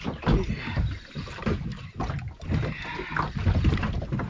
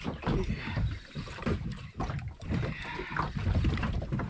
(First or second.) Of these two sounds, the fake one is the second